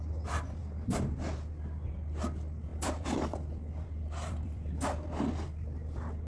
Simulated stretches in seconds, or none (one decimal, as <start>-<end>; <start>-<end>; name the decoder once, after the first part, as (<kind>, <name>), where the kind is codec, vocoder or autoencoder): 0.6-1.2 (vocoder, BigVGAN v2); 2.7-4.7